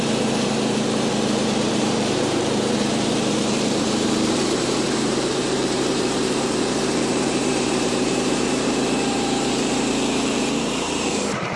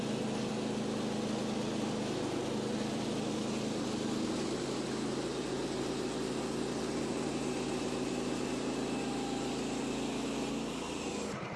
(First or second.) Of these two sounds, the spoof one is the first